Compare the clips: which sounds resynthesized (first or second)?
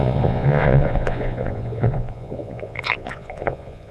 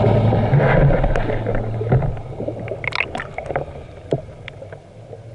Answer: first